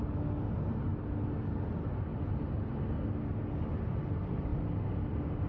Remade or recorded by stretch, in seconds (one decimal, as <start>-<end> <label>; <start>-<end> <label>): 0.0-5.5 recorded